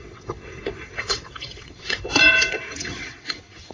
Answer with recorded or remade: remade